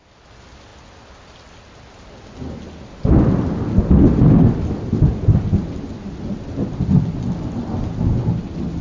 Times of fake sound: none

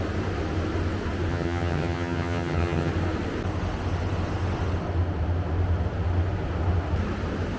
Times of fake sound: 1.3-2.9 (vocoder, HiFi-GAN)

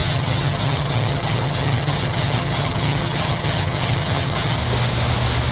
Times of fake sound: 0.0-4.6 (vocoder, HiFi-GAN)

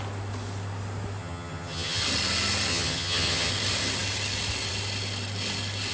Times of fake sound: 1.2-2.0 (vocoder, HiFi-GAN); 2.7-3.5